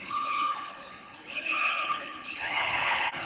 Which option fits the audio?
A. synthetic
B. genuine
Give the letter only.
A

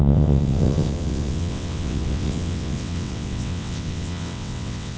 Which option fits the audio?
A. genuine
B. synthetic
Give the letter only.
B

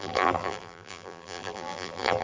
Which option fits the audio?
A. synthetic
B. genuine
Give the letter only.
A